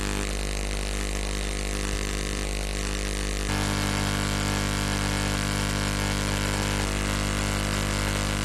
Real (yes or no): yes